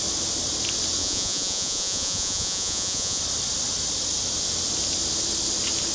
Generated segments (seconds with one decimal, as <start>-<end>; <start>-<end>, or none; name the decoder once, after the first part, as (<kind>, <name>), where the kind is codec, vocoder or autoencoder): 1.0-3.2 (vocoder, Vocos)